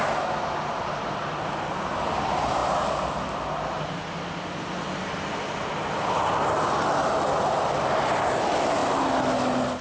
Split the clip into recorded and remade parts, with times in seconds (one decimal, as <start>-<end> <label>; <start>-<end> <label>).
0.0-9.8 recorded